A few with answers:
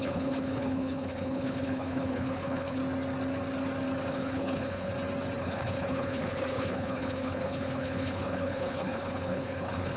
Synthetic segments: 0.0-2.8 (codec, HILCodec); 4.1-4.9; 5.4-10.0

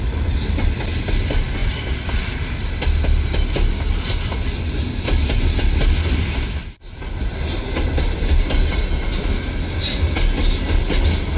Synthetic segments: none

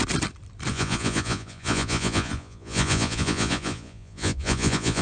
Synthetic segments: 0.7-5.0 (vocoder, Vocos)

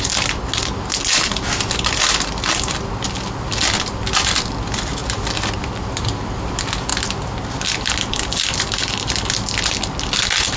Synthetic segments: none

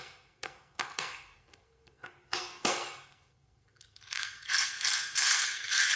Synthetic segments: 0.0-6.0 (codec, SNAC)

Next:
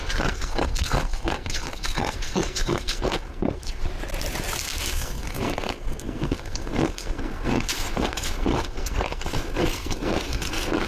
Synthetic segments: 0.0-3.8 (codec, SNAC); 4.6-10.9